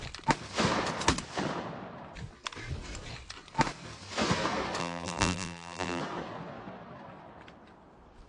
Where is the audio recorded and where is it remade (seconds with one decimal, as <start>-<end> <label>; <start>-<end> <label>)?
0.0-4.8 recorded; 4.8-6.0 remade; 6.0-8.3 recorded